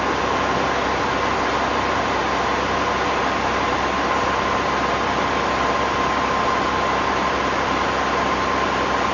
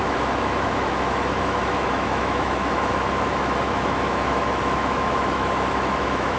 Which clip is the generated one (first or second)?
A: second